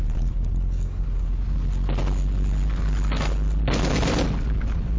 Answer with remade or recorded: recorded